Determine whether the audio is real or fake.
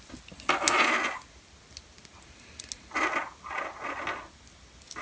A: real